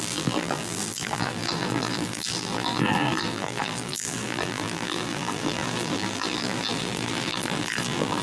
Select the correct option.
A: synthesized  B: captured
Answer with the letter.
A